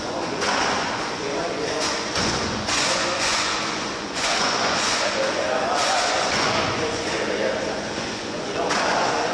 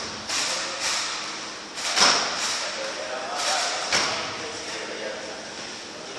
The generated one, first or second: first